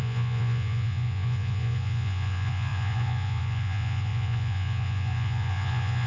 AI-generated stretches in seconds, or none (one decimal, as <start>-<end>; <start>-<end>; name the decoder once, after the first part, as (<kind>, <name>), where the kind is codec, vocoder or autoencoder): 0.0-6.1 (vocoder, Vocos)